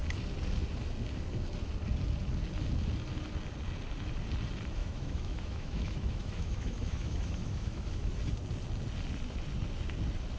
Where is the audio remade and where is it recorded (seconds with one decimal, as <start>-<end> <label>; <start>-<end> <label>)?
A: 0.0-4.8 recorded; 4.8-8.1 remade; 8.1-10.4 recorded